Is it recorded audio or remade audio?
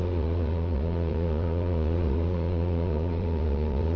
remade